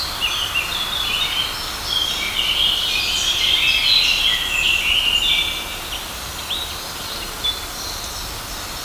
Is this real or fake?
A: real